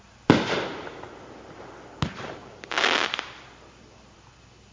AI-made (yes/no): no